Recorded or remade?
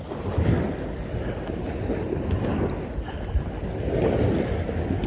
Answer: recorded